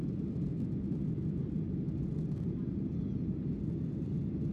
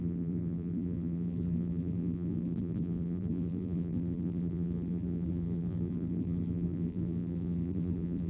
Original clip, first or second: first